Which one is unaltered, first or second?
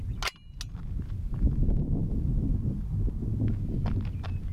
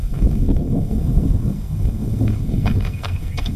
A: first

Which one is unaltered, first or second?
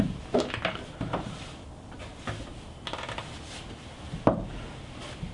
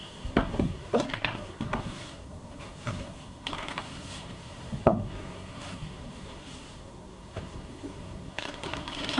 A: first